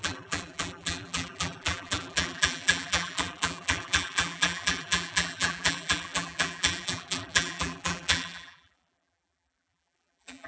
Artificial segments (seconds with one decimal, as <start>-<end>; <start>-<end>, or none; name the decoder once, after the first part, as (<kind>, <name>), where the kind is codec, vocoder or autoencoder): 0.0-10.5 (vocoder, BigVGAN v2)